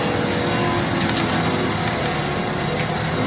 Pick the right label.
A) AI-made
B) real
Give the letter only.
B